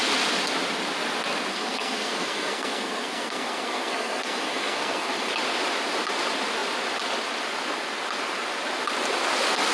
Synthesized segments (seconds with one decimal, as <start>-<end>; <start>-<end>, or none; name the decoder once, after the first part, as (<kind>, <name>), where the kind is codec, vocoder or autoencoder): 1.5-5.3 (codec, SNAC)